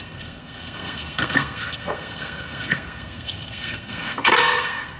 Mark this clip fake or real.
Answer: fake